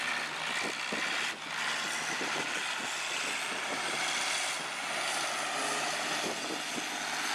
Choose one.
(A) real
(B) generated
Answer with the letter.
A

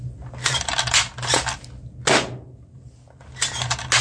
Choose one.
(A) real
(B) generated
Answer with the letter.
A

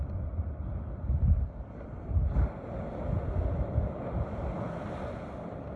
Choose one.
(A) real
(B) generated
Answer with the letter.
A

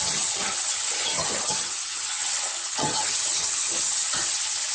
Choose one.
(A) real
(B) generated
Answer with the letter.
B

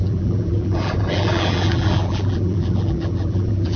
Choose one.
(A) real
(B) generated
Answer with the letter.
B